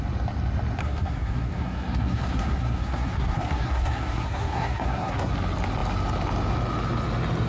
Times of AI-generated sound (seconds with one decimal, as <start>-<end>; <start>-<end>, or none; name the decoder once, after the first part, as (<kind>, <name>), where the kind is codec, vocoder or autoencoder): 0.8-5.3 (codec, SNAC)